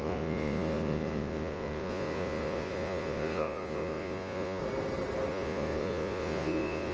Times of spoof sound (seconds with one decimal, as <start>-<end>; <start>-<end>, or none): 0.0-4.6; 5.3-6.9